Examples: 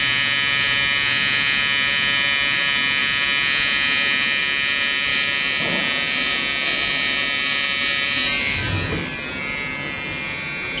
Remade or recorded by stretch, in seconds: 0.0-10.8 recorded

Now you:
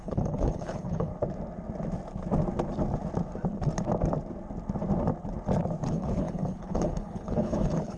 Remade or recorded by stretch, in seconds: 0.0-1.1 remade; 1.1-5.9 recorded; 5.9-8.0 remade

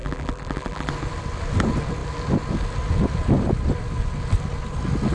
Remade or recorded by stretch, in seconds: 0.0-0.9 remade; 0.9-5.1 recorded